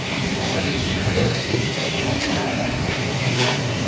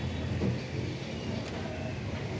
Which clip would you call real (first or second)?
second